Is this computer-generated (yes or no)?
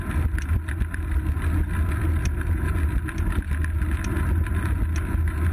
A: no